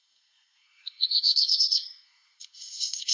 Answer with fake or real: fake